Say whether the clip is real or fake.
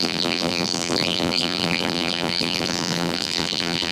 fake